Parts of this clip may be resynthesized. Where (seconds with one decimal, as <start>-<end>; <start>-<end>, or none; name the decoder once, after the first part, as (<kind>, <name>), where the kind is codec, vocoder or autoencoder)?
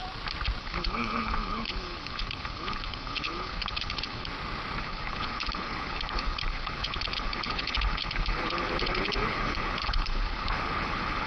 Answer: 0.6-4.3 (codec, HILCodec); 4.8-11.3